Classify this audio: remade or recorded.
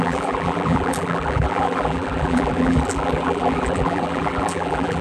remade